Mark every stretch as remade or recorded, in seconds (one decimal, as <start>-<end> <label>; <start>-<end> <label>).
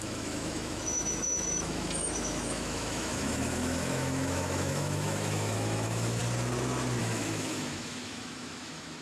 0.0-6.2 remade; 6.2-7.0 recorded; 7.0-9.0 remade